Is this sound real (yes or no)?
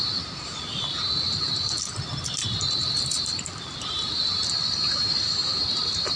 yes